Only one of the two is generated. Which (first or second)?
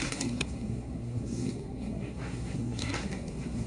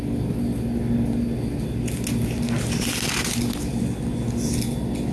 first